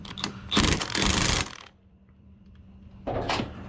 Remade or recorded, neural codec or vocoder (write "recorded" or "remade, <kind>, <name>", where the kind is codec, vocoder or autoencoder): remade, vocoder, BigVGAN v2